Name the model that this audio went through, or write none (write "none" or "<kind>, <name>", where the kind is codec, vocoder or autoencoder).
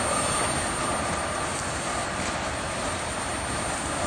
none